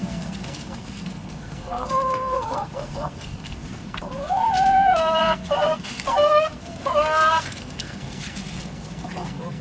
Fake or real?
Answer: fake